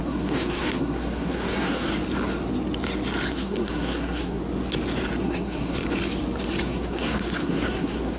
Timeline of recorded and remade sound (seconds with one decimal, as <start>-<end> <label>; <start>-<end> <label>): 0.0-1.9 remade; 1.9-3.3 recorded; 3.3-4.4 remade; 4.4-5.2 recorded; 5.2-5.8 remade; 5.8-6.6 recorded; 6.6-8.2 remade

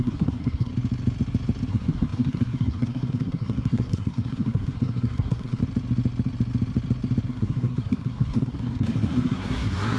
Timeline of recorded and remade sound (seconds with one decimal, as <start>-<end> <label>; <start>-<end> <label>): 0.0-0.7 remade; 0.7-1.7 recorded; 1.7-5.6 remade; 5.6-7.3 recorded; 7.3-10.0 remade

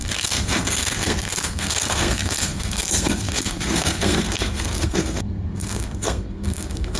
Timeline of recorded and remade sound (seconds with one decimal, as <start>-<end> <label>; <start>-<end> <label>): 0.0-7.0 remade

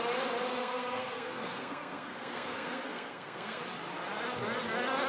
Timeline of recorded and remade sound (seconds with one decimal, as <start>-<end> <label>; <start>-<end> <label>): 0.0-0.6 recorded; 0.6-3.6 remade; 3.6-5.1 recorded

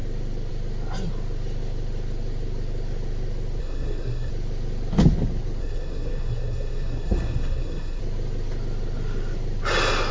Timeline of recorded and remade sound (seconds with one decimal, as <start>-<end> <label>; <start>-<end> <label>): 0.0-3.6 recorded; 3.6-4.3 remade; 4.3-5.6 recorded; 5.6-8.0 remade; 8.0-10.1 recorded

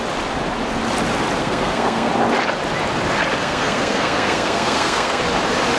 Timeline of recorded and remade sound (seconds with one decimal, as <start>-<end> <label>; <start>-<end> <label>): 0.0-1.4 recorded; 1.4-2.1 remade; 2.1-3.4 recorded; 3.4-5.2 remade; 5.2-5.8 recorded